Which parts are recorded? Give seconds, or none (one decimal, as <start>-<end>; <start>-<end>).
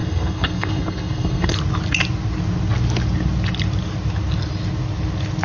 1.5-5.4